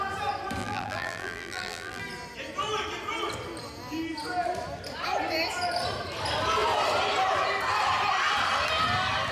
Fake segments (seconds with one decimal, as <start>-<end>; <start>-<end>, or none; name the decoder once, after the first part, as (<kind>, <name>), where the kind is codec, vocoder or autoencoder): 0.6-2.0 (vocoder, BigVGAN v2)